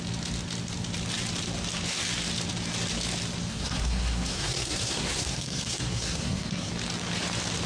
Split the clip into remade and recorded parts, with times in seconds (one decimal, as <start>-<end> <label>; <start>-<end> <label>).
0.0-3.5 recorded; 3.5-6.7 remade; 6.7-7.7 recorded